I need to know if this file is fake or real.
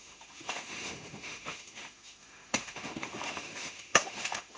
fake